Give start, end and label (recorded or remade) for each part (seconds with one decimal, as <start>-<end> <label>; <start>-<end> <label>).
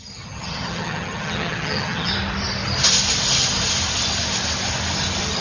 0.0-2.1 remade; 2.1-5.4 recorded